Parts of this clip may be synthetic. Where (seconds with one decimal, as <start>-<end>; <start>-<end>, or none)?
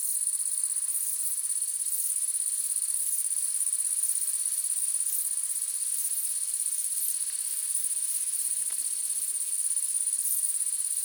7.8-8.6